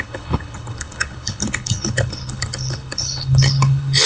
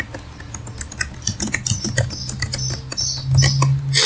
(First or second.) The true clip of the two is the second